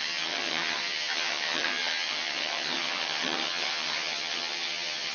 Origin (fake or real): fake